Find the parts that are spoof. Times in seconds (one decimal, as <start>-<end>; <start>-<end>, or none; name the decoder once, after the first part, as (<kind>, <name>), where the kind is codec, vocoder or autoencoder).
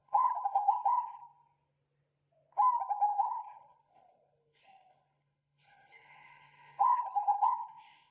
0.0-1.2 (codec, HILCodec); 3.1-8.1